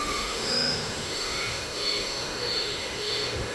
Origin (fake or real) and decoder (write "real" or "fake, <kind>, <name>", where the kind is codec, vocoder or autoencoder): fake, autoencoder, DAC-VAE